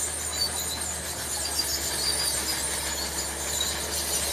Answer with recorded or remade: recorded